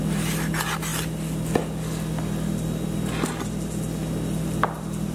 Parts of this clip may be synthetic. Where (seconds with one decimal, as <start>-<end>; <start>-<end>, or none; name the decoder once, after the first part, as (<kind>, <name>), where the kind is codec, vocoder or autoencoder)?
none